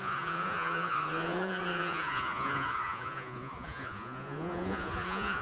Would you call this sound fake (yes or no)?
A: yes